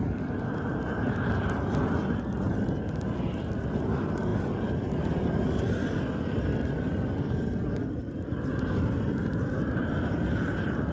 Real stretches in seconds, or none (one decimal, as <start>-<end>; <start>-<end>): 0.0-10.9